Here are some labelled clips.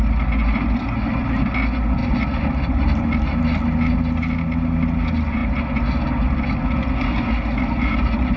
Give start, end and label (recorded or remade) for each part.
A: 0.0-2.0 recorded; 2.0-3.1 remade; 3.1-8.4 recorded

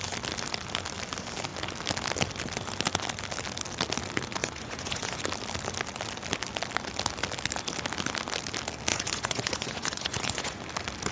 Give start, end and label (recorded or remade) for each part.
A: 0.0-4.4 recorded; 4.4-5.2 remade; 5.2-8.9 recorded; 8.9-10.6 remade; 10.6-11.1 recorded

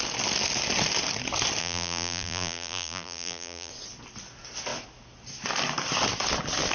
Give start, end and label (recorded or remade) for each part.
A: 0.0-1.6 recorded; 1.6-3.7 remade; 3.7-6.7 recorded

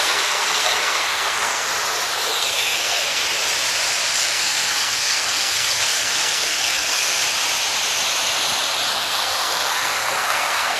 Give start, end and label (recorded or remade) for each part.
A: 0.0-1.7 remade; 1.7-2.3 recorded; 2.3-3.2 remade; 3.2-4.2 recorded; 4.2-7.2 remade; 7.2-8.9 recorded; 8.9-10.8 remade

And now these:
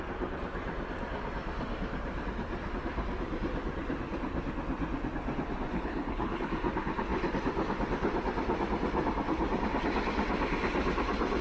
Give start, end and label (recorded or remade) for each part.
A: 0.0-5.7 recorded; 5.7-6.5 remade; 6.5-11.4 recorded

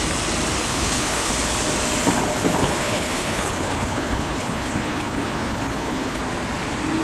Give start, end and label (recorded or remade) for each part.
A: 0.0-0.7 recorded; 0.7-1.3 remade; 1.3-2.6 recorded; 2.6-6.2 remade; 6.2-7.0 recorded